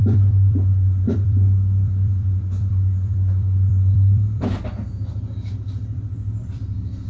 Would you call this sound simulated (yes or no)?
yes